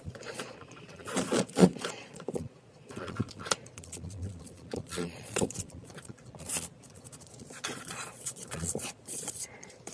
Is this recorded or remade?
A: remade